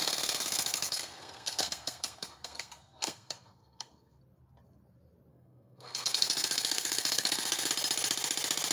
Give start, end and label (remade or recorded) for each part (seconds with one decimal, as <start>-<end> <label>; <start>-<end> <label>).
0.0-4.2 remade; 4.2-5.3 recorded; 5.3-7.7 remade; 7.7-8.7 recorded